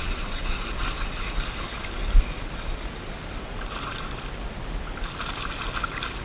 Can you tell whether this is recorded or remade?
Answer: recorded